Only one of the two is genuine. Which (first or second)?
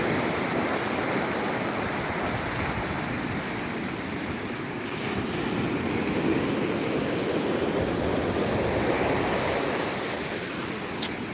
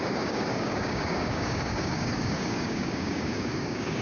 first